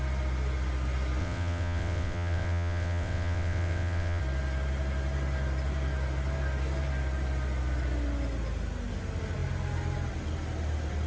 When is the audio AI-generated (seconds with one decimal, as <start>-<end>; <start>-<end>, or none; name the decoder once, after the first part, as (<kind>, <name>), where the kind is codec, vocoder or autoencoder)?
1.2-4.2 (vocoder, WaveNeXt)